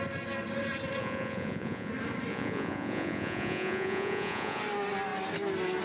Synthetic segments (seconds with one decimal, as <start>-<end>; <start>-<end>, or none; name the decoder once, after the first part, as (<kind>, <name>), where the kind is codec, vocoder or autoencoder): 1.0-1.9 (vocoder, Vocos); 2.3-4.6